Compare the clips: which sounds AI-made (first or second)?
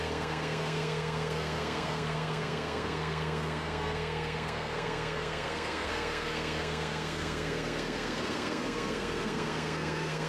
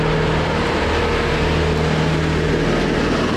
first